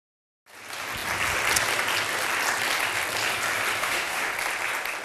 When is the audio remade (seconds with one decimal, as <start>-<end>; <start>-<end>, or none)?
3.8-4.3